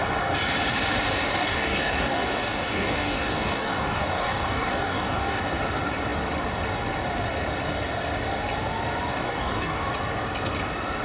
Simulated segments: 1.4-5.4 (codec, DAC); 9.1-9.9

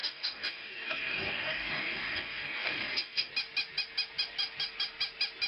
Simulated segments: 0.0-3.3 (codec, DAC)

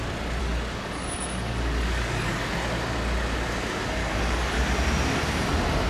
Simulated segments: 0.4-2.4 (codec, DAC); 4.0-4.6

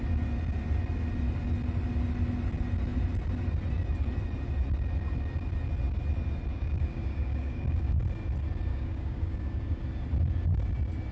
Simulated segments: 6.5-8.0 (codec, DAC); 8.7-9.8